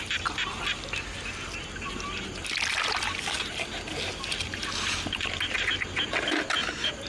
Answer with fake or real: real